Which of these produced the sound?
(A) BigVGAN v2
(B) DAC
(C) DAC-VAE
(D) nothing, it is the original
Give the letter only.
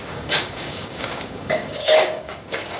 B